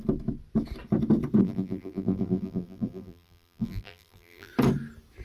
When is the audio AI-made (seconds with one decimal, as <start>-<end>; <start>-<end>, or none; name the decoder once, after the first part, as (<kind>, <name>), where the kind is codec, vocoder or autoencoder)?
1.4-4.5 (vocoder, BigVGAN v2)

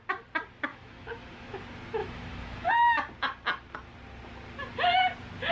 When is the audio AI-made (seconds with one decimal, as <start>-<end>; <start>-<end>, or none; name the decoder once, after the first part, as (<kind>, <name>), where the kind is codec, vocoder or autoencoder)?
0.7-1.6 (autoencoder, DAC-VAE); 2.0-2.7

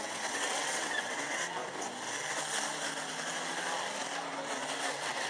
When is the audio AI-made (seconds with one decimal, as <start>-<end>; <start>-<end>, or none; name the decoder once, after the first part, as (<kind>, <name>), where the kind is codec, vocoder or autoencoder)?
0.0-1.6 (vocoder, WaveNeXt); 4.8-5.3

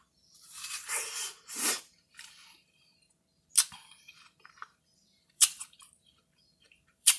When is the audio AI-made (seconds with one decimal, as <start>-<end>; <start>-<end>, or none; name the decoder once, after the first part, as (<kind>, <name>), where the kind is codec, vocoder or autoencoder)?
0.0-2.9 (vocoder, BigVGAN v2); 3.7-7.2